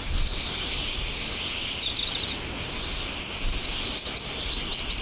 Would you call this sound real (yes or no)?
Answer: yes